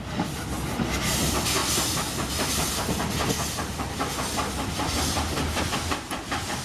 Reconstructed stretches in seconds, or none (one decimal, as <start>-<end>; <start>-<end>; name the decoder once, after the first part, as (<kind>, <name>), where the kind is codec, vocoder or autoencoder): none